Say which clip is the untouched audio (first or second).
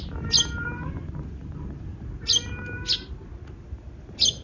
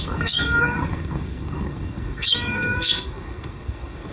first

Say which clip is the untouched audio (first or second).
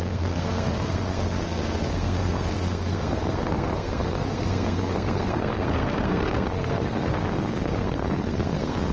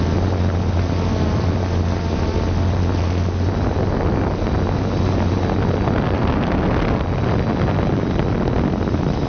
second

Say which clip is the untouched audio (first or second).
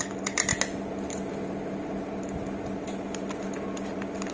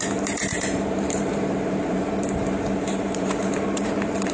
first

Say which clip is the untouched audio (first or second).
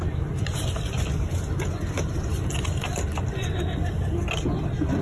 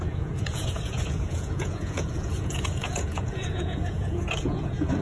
first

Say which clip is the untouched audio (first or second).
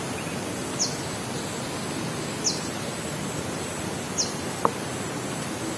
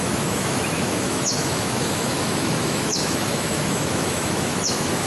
first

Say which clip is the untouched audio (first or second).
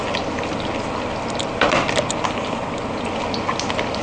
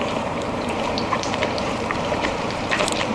first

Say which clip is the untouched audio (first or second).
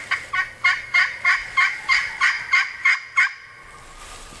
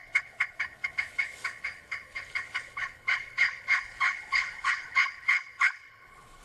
first